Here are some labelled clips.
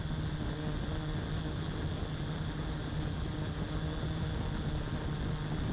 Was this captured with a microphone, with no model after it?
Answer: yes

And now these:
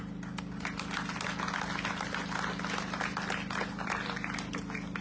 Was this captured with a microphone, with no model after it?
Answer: yes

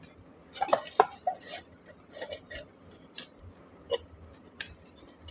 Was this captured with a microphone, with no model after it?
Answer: yes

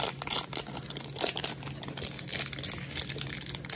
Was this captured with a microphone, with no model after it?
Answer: yes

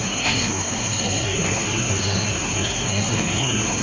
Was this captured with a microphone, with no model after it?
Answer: no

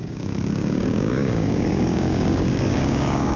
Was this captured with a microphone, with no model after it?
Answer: no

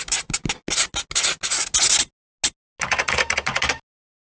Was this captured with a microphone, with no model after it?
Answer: yes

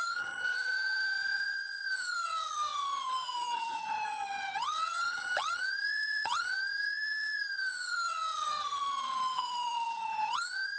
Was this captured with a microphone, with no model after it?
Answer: no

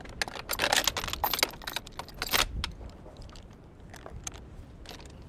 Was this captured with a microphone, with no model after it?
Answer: yes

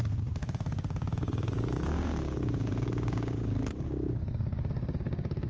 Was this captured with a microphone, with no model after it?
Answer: no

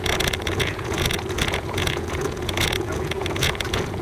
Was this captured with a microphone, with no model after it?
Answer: no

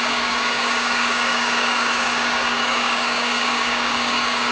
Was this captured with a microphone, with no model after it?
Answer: no